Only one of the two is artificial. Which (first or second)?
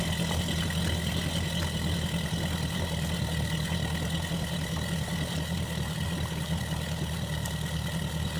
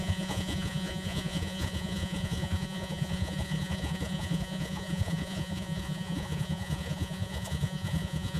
second